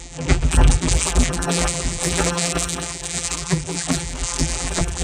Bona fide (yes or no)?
no